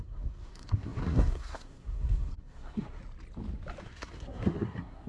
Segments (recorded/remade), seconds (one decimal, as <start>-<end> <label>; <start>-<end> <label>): 0.0-3.0 remade; 3.0-3.8 recorded; 3.8-5.1 remade